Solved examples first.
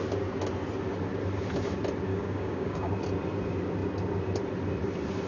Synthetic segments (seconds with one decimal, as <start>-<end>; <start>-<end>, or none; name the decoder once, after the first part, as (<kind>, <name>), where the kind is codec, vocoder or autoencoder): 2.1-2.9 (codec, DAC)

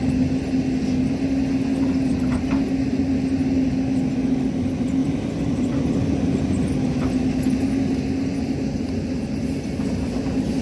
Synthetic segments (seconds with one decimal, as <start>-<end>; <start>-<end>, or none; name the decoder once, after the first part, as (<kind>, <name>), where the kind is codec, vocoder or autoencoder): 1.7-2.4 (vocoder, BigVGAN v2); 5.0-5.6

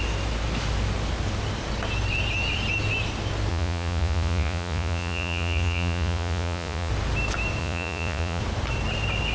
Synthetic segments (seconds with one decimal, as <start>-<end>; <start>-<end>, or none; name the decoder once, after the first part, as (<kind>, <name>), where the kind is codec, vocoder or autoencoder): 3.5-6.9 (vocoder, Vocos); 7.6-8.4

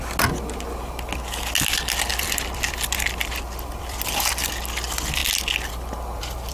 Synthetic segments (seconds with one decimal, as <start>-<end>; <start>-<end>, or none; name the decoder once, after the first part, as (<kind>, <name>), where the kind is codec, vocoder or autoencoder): 2.1-4.3 (vocoder, BigVGAN v2)

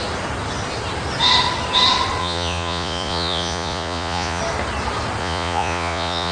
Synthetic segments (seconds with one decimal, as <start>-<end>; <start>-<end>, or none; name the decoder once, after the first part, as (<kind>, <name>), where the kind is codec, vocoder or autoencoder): 2.2-4.4 (vocoder, Vocos); 5.2-6.3

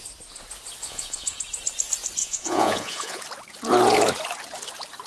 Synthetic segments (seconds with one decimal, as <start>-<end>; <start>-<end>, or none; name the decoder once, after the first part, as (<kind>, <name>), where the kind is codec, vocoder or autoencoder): 0.8-1.4 (vocoder, Vocos); 2.2-3.2